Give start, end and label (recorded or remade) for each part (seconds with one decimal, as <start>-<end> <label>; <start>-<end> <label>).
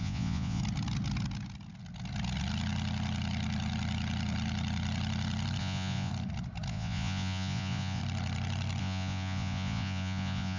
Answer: 0.0-0.6 remade; 0.6-5.6 recorded; 5.6-6.1 remade; 6.1-6.7 recorded; 6.7-8.0 remade; 8.0-8.8 recorded; 8.8-10.6 remade